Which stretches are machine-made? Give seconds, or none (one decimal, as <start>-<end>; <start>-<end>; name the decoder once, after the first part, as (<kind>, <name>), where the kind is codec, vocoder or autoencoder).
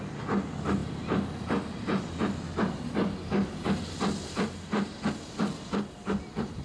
none